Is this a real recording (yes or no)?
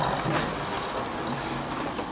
yes